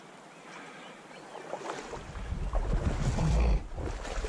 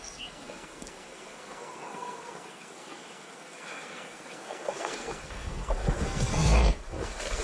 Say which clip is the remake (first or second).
second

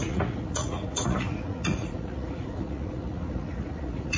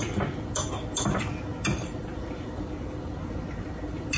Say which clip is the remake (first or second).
first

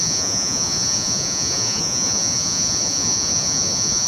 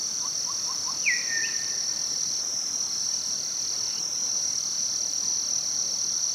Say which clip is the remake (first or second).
first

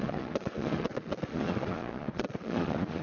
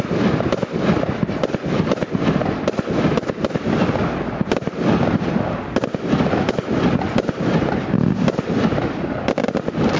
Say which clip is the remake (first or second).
first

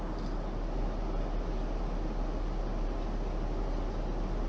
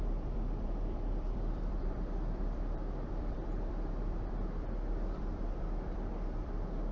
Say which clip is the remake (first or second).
second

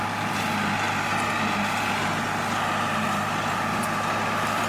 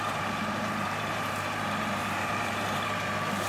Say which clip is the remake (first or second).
second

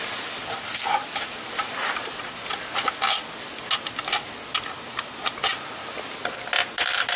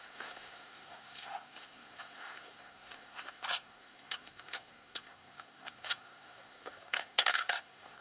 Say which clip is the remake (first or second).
second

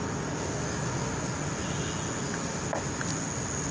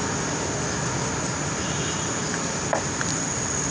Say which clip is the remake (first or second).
second